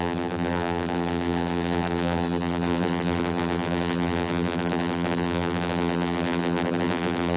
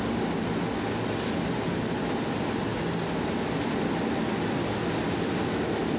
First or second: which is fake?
first